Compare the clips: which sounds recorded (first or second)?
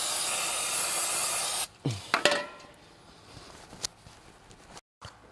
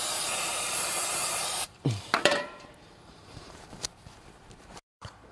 first